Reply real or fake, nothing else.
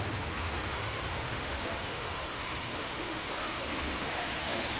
fake